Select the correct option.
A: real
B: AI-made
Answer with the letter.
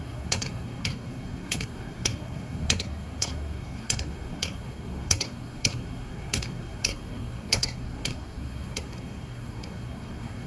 B